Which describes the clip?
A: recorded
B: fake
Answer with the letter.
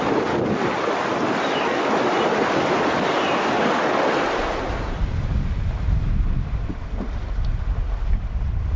A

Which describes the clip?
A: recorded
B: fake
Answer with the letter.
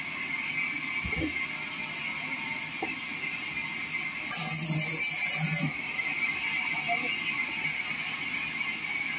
A